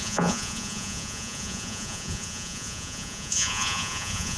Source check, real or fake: fake